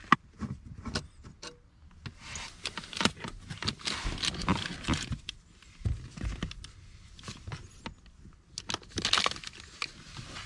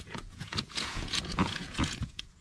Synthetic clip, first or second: second